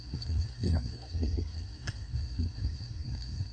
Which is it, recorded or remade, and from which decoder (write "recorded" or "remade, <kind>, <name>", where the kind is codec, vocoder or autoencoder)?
remade, codec, SNAC